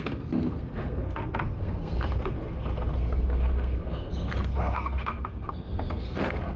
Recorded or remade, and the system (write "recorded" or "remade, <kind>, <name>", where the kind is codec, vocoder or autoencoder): remade, codec, SNAC